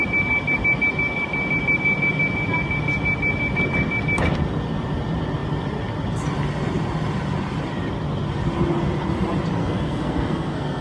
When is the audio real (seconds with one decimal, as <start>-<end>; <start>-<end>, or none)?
0.0-9.6